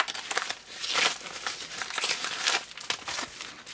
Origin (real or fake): real